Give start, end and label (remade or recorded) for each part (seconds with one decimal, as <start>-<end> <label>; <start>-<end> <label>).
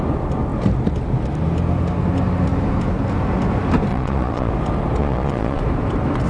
0.0-3.9 recorded; 3.9-4.5 remade; 4.5-5.0 recorded; 5.0-5.6 remade; 5.6-6.3 recorded